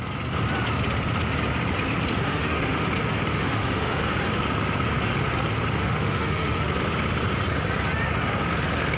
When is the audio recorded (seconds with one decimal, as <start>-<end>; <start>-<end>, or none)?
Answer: 0.0-2.1; 2.9-3.3; 4.0-5.8; 6.7-9.0